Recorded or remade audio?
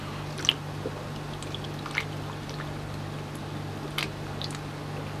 recorded